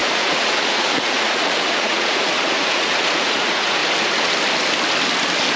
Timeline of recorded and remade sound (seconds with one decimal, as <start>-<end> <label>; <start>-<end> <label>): 0.0-3.8 remade; 3.8-5.6 recorded